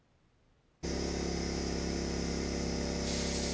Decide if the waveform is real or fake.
real